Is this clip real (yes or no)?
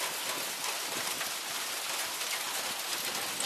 yes